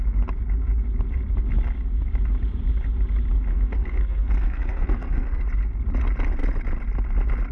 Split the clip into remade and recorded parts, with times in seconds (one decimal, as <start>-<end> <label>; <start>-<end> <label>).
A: 0.0-3.5 recorded; 3.5-5.4 remade; 5.4-7.5 recorded